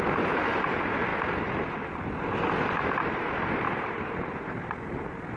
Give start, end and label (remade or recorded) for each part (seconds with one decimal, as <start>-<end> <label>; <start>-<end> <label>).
0.0-5.4 recorded